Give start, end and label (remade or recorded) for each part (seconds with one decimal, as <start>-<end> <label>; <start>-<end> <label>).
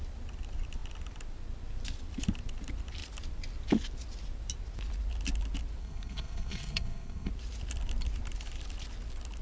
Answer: 0.0-5.8 recorded; 5.8-7.3 remade; 7.3-9.4 recorded